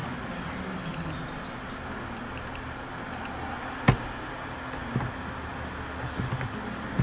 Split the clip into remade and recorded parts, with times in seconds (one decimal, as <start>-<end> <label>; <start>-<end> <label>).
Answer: 0.0-7.0 recorded